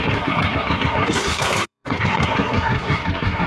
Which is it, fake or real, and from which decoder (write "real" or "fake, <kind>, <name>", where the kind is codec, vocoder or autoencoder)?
fake, codec, SNAC